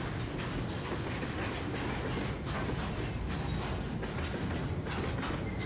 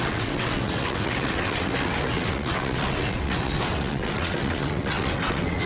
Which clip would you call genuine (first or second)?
first